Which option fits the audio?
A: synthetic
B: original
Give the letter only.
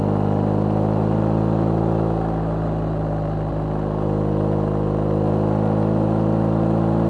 B